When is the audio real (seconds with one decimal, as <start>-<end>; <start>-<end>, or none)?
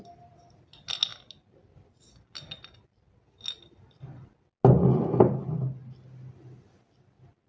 0.0-7.5